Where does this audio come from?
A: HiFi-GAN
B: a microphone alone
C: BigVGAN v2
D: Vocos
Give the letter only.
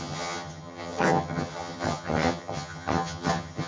A